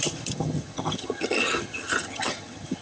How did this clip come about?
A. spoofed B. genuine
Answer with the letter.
A